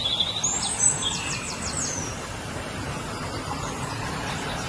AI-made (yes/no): no